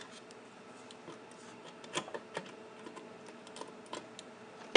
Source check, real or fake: real